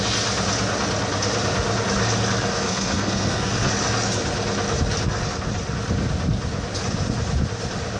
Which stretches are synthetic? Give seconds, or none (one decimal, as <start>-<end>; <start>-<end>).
2.5-3.7